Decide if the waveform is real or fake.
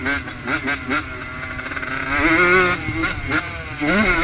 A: real